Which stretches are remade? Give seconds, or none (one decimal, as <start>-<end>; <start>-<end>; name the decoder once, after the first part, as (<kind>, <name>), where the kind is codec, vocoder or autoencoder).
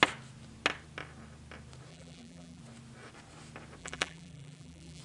1.9-2.6 (vocoder, BigVGAN v2); 3.8-5.0